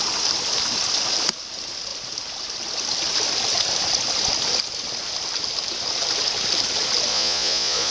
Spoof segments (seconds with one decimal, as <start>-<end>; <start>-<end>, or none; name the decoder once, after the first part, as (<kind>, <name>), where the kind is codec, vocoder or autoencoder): 7.1-7.9 (vocoder, Vocos)